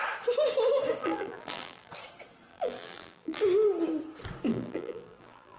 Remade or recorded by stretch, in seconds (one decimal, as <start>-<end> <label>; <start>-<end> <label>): 0.0-1.0 recorded; 1.0-1.9 remade; 1.9-2.5 recorded; 2.5-3.4 remade; 3.4-4.5 recorded; 4.5-5.6 remade